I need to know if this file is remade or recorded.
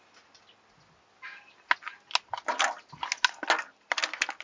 recorded